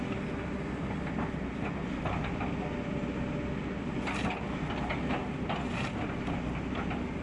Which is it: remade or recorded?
recorded